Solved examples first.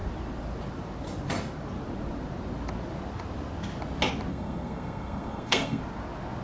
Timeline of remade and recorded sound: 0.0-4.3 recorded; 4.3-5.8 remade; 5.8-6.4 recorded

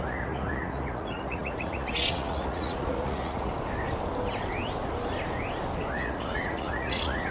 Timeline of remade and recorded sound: 0.0-3.5 remade; 3.5-5.9 recorded; 5.9-7.3 remade

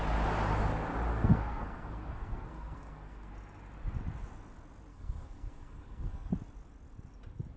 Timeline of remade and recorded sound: 0.0-1.1 recorded; 1.1-3.3 remade; 3.3-4.9 recorded; 4.9-6.3 remade; 6.3-7.6 recorded

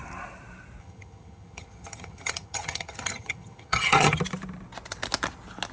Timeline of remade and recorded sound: 0.0-0.8 recorded; 0.8-4.2 remade; 4.2-5.7 recorded

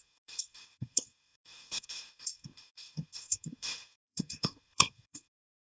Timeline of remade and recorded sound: 0.0-5.7 remade

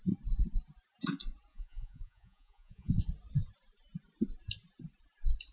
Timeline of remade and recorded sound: 0.0-1.5 recorded; 1.5-3.0 remade; 3.0-5.5 recorded